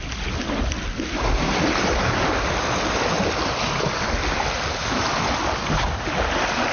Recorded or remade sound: recorded